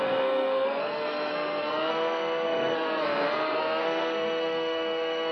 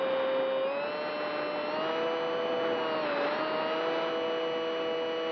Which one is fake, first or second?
first